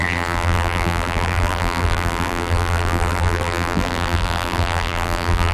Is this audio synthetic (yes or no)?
yes